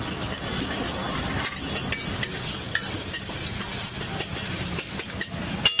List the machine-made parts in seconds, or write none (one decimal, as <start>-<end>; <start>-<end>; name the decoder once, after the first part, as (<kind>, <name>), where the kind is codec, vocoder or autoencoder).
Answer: 3.7-5.3 (vocoder, BigVGAN v2)